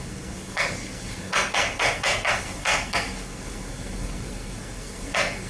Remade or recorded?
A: remade